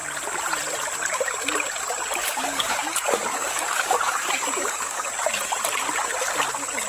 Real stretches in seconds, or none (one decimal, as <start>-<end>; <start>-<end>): 0.0-2.2; 5.1-6.9